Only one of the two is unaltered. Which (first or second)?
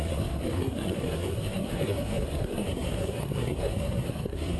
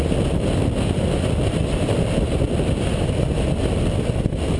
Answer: second